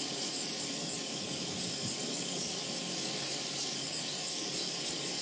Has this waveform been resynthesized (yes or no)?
yes